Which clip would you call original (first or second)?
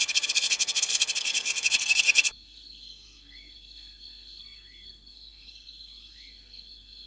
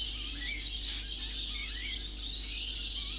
second